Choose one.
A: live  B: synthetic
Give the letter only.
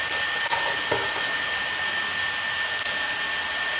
A